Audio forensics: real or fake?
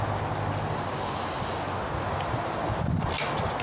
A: real